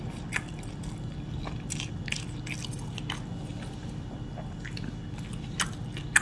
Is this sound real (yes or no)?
yes